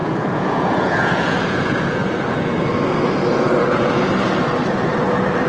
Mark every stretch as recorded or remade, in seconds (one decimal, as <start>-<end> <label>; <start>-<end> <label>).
0.0-2.5 remade; 2.5-5.5 recorded